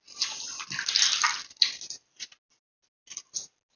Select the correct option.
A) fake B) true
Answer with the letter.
B